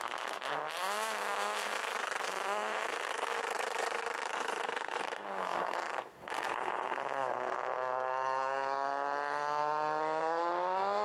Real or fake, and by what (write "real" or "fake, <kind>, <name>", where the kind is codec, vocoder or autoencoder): fake, codec, SNAC